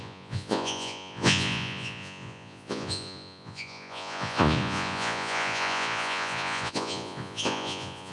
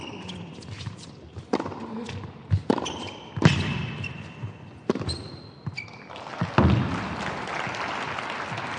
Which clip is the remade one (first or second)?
first